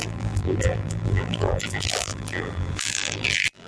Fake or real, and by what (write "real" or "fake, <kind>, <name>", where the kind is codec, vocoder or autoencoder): fake, vocoder, BigVGAN v2